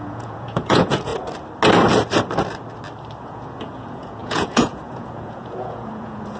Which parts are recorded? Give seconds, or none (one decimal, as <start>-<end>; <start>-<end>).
1.1-3.2